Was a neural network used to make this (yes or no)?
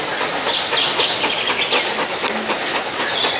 no